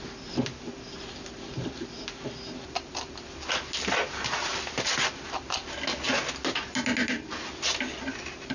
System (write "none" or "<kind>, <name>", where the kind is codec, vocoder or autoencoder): none